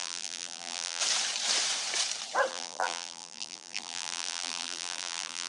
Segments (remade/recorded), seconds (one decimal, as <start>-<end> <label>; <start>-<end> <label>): 0.0-1.0 remade; 1.0-2.5 recorded; 2.5-5.5 remade